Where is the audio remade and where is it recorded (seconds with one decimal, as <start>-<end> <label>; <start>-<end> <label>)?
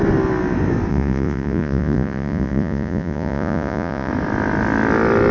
0.0-0.9 recorded; 0.9-4.1 remade; 4.1-5.3 recorded